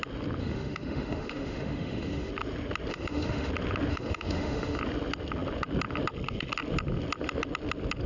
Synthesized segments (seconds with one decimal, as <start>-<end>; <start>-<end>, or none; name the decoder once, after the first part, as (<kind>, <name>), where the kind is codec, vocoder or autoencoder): 0.4-2.3 (autoencoder, DAC-VAE); 2.9-3.5; 3.9-4.8